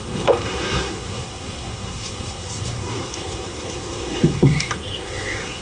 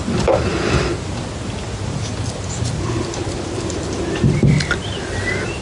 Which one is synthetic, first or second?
first